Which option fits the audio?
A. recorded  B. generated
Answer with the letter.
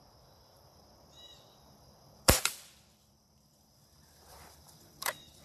B